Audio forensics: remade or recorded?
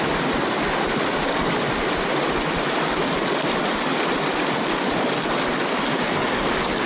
recorded